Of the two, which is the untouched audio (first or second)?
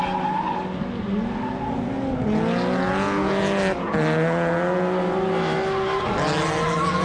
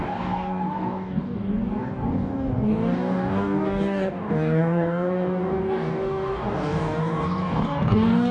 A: first